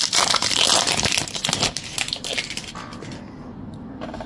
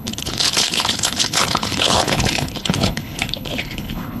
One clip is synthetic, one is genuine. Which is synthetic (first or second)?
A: second